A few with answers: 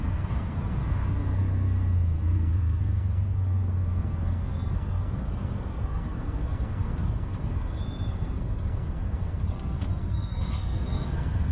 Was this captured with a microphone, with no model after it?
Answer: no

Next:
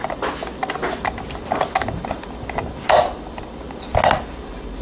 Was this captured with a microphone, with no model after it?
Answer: yes